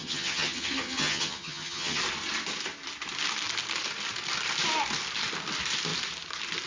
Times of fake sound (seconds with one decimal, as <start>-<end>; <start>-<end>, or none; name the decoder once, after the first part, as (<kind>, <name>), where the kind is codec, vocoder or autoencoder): 0.0-2.0 (vocoder, HiFi-GAN)

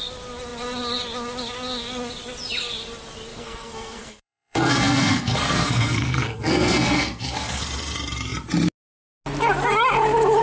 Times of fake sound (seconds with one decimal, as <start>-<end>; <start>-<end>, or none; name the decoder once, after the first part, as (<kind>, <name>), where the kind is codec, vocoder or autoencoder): 3.3-7.6 (codec, SNAC)

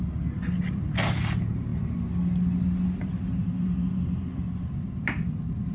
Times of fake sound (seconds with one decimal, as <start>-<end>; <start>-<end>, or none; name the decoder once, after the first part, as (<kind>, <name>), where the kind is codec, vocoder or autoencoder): none

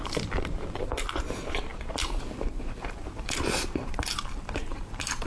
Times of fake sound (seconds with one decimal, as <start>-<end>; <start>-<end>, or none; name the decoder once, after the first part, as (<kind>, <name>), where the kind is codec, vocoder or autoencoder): 0.0-5.3 (vocoder, BigVGAN v2)

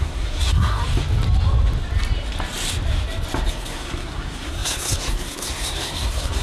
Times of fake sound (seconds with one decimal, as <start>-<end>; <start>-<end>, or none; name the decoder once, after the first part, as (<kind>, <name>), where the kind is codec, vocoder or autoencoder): 0.0-0.8 (codec, SNAC); 3.5-6.4